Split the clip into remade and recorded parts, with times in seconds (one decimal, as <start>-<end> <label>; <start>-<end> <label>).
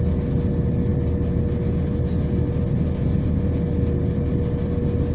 0.0-5.1 recorded